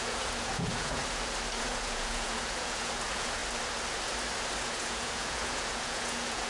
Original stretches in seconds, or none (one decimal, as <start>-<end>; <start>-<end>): 1.0-1.6; 3.4-4.6